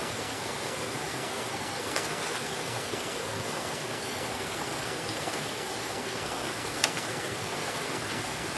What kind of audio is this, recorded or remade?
remade